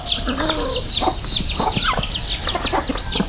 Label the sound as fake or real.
real